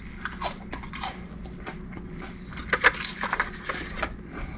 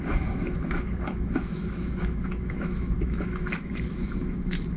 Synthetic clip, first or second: second